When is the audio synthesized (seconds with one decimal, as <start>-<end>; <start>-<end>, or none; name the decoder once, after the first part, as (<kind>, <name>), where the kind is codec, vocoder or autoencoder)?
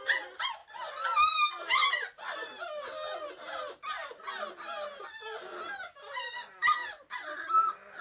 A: none